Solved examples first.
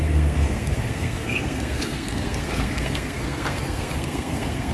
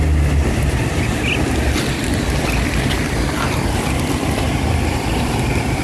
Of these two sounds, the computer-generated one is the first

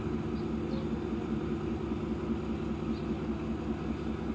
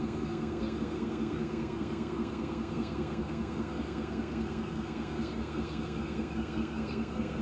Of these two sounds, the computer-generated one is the second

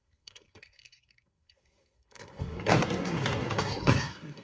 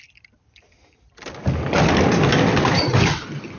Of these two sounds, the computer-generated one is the first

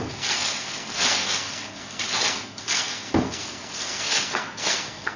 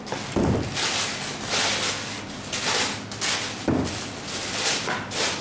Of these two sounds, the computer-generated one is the first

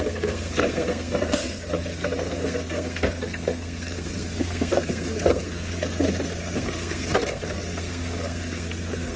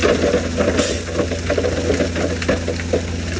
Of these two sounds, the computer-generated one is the first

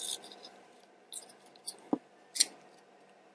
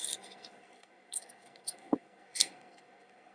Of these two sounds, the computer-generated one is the second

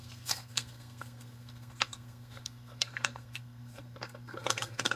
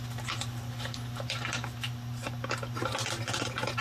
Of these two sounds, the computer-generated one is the first